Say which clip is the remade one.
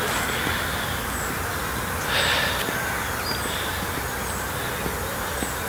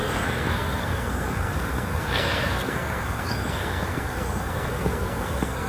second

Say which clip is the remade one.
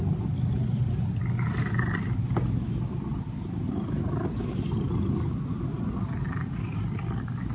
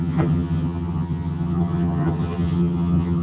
second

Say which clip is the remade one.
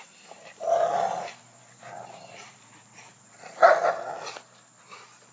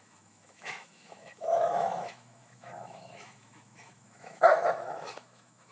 second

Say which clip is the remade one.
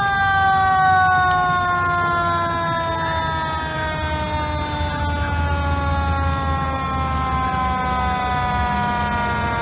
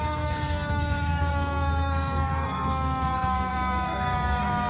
second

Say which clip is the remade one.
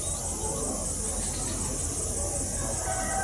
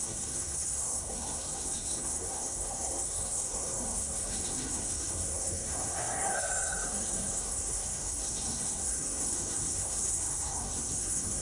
second